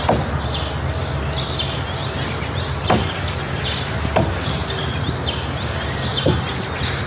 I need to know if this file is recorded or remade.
recorded